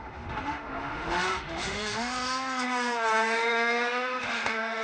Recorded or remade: remade